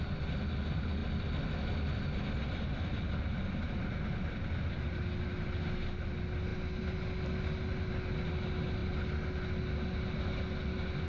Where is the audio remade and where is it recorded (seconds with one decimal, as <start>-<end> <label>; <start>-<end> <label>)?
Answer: 0.0-11.1 recorded